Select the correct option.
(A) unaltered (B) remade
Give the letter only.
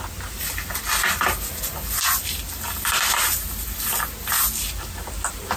A